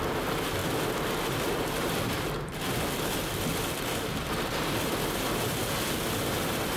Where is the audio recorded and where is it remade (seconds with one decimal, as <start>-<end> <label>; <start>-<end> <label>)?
0.0-0.6 recorded; 0.6-4.5 remade; 4.5-6.8 recorded